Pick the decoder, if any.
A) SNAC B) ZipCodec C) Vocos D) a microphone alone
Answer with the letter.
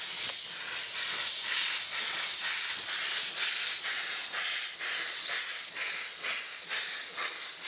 D